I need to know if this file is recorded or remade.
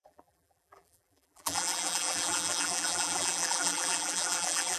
remade